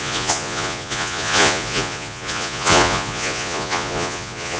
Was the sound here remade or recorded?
remade